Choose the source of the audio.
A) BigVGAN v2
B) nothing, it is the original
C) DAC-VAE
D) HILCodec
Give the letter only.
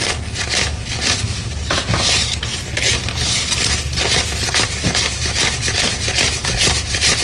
B